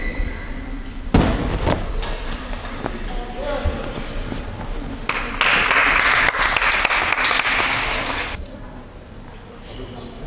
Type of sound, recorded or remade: recorded